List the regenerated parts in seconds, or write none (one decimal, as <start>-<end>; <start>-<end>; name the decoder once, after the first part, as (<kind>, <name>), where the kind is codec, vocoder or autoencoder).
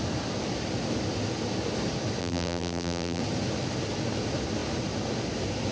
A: 2.2-3.2 (vocoder, BigVGAN v2)